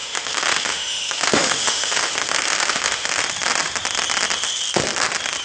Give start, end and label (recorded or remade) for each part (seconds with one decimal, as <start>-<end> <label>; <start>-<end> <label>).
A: 0.0-3.2 remade; 3.2-5.4 recorded